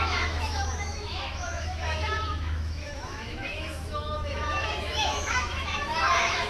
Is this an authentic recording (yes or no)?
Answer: no